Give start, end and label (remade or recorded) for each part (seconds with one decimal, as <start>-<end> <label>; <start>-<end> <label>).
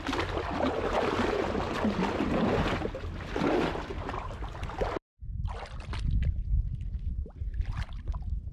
0.0-3.9 recorded; 3.9-5.0 remade; 5.0-8.5 recorded